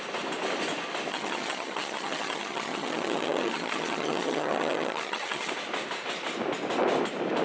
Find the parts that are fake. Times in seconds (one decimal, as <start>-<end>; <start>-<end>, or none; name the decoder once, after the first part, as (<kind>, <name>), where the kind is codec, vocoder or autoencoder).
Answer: 1.1-5.5 (vocoder, HiFi-GAN)